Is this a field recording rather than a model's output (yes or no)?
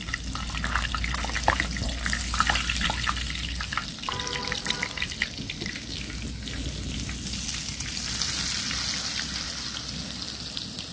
yes